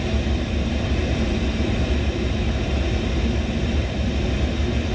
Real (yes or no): yes